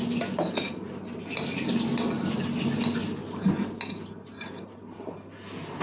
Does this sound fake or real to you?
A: real